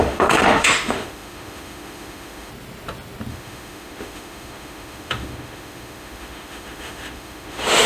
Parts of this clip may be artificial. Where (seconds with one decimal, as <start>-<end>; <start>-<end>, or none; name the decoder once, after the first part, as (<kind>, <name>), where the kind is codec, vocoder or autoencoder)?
0.0-2.5 (autoencoder, DAC-VAE); 3.3-7.9